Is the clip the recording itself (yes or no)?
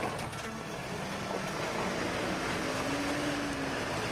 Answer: yes